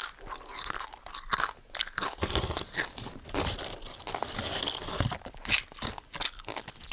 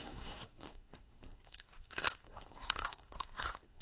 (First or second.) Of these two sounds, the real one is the first